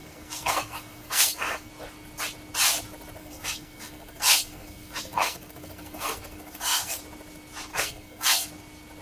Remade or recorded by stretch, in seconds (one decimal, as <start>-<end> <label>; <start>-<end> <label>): 0.0-1.7 remade; 1.7-3.2 recorded; 3.2-7.0 remade; 7.0-7.7 recorded; 7.7-8.5 remade; 8.5-9.0 recorded